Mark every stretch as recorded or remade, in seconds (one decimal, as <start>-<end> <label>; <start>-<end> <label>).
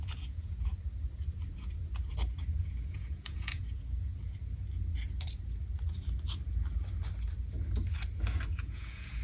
0.0-0.7 remade; 0.7-2.6 recorded; 2.6-4.1 remade; 4.1-8.6 recorded; 8.6-9.2 remade